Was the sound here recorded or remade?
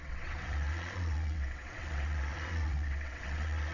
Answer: remade